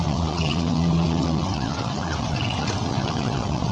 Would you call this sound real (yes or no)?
no